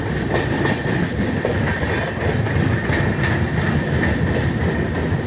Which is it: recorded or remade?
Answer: recorded